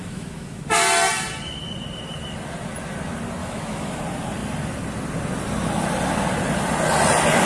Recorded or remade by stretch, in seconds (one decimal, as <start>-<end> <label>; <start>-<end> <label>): 0.0-0.6 remade; 0.6-3.4 recorded; 3.4-4.0 remade; 4.0-7.5 recorded